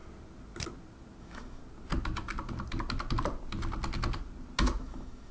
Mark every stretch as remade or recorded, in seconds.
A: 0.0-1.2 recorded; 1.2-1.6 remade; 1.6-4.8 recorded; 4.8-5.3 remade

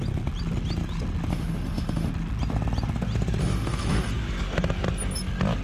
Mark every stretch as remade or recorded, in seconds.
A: 0.0-1.3 recorded; 1.3-2.1 remade; 2.1-3.4 recorded; 3.4-4.1 remade; 4.1-5.6 recorded

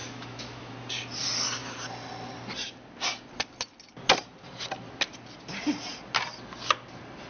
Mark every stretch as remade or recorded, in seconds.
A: 0.0-0.7 remade; 0.7-7.3 recorded

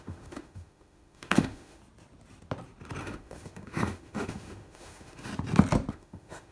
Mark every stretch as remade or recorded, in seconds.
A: 0.0-1.8 remade; 1.8-3.0 recorded; 3.0-5.3 remade; 5.3-5.9 recorded; 5.9-6.5 remade